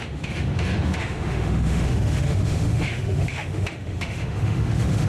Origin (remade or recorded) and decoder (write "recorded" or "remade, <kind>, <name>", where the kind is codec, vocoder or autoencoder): remade, autoencoder, DAC-VAE